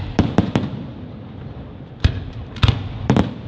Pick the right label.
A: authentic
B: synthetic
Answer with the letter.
B